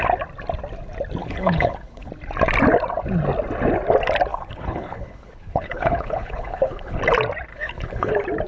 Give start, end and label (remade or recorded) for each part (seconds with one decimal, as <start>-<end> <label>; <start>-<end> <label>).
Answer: 0.0-1.2 recorded; 1.2-2.1 remade; 2.1-4.3 recorded; 4.3-7.0 remade; 7.0-7.5 recorded; 7.5-8.1 remade; 8.1-8.5 recorded